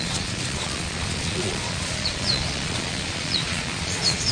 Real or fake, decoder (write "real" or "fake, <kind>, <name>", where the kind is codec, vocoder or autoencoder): fake, vocoder, Vocos